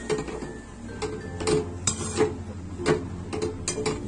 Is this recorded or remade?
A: recorded